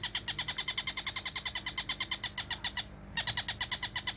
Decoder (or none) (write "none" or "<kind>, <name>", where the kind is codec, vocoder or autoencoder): none